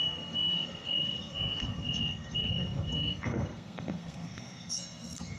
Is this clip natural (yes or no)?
no